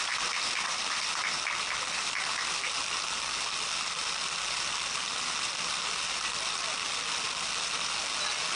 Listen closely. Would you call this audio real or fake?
real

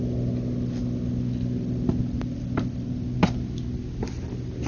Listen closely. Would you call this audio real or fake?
real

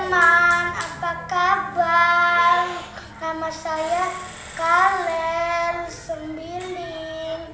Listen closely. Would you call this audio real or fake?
real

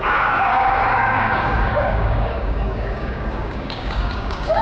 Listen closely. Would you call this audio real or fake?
fake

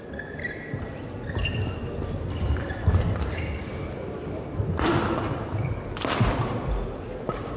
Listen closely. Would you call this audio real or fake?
real